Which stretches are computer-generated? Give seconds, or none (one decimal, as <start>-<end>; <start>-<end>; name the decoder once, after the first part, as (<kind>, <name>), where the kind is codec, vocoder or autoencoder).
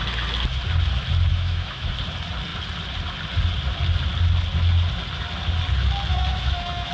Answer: 1.3-1.9 (autoencoder, DAC-VAE); 6.1-6.9